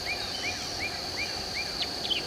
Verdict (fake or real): real